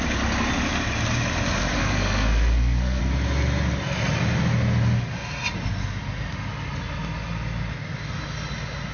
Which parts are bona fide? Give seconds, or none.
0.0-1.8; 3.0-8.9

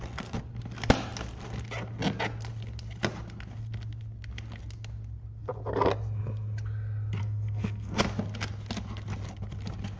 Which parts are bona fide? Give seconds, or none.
0.0-7.2; 8.0-10.0